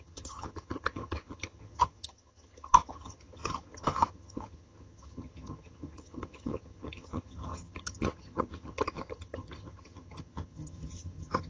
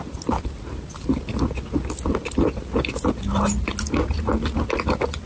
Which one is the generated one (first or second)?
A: first